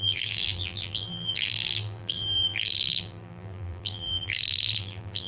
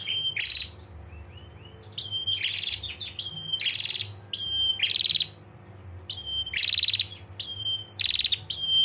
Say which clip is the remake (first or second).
first